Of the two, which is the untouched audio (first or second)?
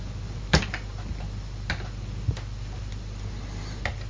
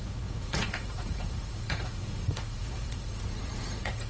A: first